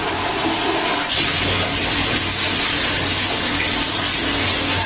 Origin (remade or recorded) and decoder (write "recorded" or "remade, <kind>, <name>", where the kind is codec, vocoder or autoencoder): recorded